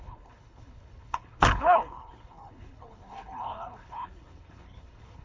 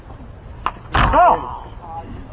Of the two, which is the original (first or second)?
second